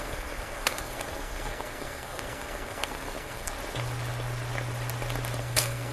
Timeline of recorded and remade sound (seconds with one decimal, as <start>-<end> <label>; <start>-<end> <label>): 0.0-3.5 remade; 3.5-5.4 recorded; 5.4-5.9 remade